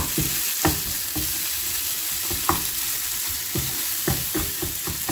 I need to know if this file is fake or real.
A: fake